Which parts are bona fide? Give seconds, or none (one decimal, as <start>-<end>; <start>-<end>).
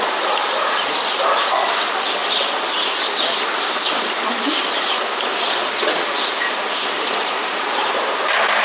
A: 0.0-5.6; 7.6-8.6